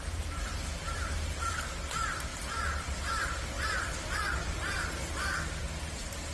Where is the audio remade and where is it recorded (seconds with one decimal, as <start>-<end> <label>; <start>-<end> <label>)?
0.0-6.3 recorded